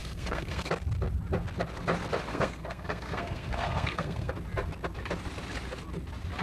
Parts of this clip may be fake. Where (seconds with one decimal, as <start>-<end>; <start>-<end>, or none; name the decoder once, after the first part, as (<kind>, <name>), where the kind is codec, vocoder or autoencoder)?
0.0-0.7 (codec, SNAC); 2.3-4.3